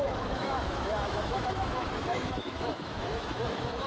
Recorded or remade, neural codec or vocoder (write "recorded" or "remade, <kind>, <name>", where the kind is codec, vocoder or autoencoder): remade, autoencoder, DAC-VAE